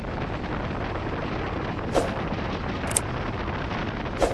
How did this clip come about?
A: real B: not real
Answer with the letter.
A